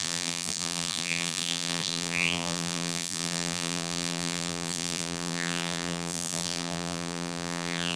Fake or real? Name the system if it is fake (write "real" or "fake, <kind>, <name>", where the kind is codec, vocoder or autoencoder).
fake, vocoder, BigVGAN v2